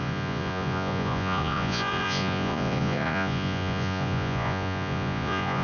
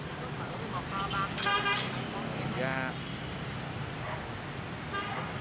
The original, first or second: second